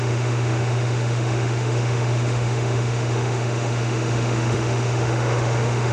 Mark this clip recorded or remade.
remade